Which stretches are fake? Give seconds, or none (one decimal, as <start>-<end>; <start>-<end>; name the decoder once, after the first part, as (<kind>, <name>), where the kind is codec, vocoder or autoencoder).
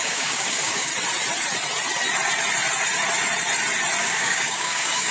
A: 0.0-0.9 (codec, DAC); 4.0-5.1